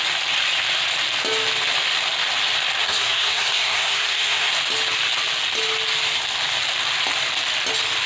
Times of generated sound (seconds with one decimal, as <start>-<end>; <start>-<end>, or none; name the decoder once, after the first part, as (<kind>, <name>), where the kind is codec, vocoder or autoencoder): 2.8-4.5 (codec, SNAC)